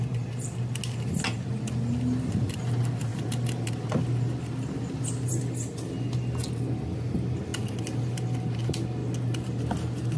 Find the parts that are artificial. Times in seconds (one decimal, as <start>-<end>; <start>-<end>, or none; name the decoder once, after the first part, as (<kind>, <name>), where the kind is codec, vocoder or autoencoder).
none